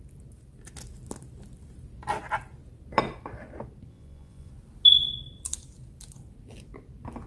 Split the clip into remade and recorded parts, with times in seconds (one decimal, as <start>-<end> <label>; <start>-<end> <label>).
0.0-3.9 recorded; 3.9-4.5 remade; 4.5-7.3 recorded